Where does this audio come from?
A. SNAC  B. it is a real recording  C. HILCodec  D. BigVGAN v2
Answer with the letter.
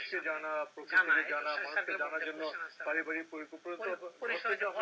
B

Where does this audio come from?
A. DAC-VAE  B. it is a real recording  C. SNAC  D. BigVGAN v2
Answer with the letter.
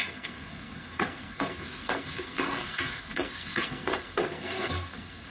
C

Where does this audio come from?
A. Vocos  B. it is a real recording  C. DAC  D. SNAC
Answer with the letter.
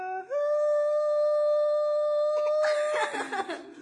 B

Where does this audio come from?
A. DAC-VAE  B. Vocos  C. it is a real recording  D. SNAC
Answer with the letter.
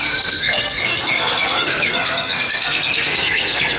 D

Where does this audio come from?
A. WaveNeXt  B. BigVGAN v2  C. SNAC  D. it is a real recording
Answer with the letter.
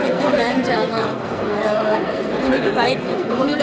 C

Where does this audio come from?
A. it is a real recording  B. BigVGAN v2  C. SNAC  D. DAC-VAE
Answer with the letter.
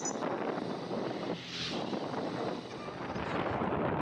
A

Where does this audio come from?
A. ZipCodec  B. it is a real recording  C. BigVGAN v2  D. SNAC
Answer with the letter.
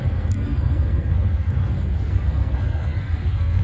D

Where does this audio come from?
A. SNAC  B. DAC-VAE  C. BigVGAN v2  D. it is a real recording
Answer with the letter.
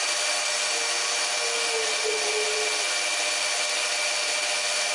D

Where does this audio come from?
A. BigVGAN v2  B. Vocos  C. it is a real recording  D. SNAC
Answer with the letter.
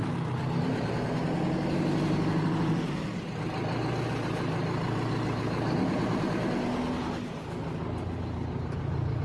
C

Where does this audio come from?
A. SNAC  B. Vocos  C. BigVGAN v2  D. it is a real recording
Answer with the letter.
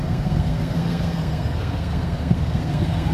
A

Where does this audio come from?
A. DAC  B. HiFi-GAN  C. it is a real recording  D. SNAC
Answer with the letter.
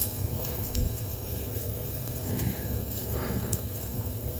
D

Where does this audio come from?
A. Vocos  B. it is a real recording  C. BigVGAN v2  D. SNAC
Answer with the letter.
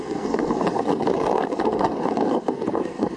D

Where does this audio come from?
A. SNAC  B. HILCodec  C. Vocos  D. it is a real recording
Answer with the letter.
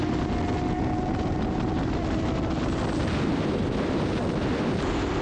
D